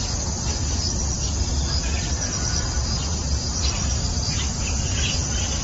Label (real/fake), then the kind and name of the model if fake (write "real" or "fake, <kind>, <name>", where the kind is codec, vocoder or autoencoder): real